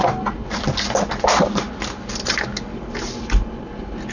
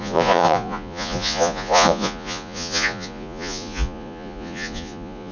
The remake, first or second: second